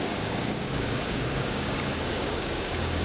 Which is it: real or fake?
fake